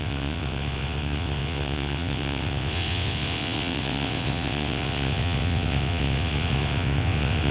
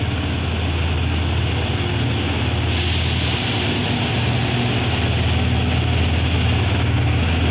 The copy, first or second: first